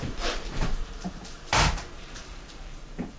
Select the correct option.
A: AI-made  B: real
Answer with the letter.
A